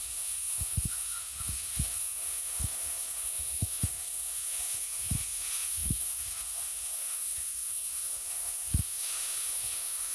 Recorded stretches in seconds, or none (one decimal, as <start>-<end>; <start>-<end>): none